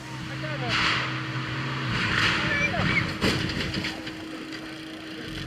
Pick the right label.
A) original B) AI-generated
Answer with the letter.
A